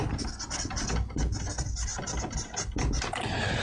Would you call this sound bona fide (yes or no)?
yes